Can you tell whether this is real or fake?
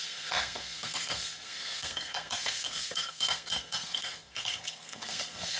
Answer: fake